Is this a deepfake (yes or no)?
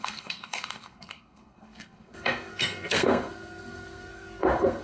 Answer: yes